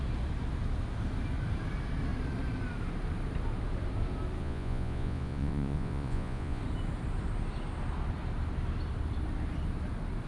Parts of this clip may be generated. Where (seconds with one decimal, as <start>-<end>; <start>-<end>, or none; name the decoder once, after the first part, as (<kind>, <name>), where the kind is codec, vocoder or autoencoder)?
4.4-6.6 (vocoder, Vocos)

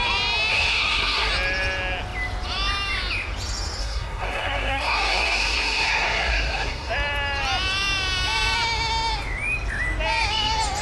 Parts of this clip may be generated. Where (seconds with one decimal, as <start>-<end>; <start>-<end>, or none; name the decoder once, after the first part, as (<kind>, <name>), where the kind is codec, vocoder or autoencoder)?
0.5-1.3 (codec, SNAC); 3.8-6.9

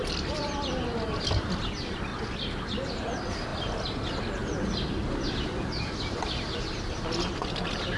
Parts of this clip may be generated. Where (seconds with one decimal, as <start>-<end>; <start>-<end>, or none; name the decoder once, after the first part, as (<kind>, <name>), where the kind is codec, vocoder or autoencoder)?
0.0-2.1 (vocoder, BigVGAN v2); 2.9-8.0

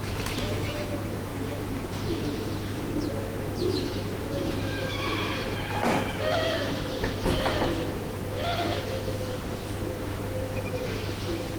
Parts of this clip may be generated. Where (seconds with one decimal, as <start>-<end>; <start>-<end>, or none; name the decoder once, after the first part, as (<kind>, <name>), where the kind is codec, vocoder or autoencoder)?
0.0-11.6 (autoencoder, DAC-VAE)

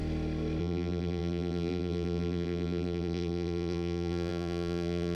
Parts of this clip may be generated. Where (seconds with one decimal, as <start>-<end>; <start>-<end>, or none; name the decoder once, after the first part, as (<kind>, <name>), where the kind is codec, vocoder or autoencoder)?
0.6-5.1 (vocoder, BigVGAN v2)